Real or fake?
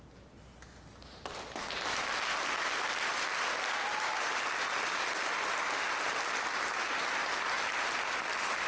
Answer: real